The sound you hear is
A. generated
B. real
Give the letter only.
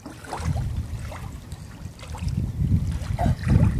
B